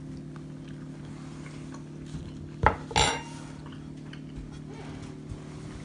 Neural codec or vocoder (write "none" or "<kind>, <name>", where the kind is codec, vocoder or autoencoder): none